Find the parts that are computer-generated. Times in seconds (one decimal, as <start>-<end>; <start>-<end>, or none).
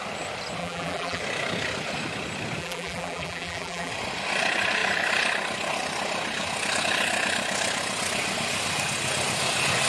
0.6-1.2; 2.6-3.9